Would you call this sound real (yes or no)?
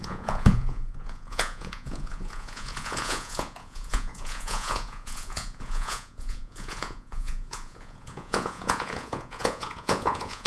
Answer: no